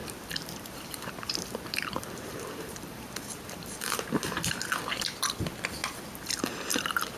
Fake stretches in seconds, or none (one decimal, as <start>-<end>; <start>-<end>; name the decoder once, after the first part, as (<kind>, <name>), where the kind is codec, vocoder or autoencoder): 0.0-4.3 (vocoder, BigVGAN v2)